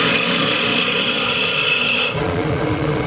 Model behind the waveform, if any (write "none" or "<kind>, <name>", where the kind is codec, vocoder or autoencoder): vocoder, Vocos